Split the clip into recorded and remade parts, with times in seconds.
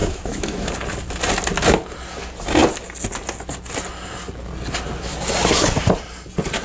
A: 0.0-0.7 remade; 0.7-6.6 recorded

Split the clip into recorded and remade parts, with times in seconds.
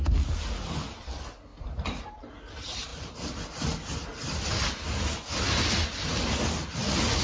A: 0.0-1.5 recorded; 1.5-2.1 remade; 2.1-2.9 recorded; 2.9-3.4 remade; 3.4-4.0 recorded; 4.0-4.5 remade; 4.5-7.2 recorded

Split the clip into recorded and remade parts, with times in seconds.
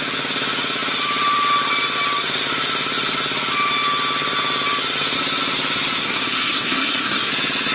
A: 0.0-6.0 recorded; 6.0-7.3 remade; 7.3-7.7 recorded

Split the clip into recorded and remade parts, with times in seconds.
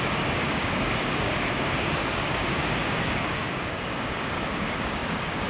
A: 0.0-5.5 remade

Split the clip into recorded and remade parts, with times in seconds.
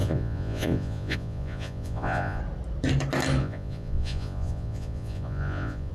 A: 0.0-2.4 remade; 2.4-3.4 recorded; 3.4-5.9 remade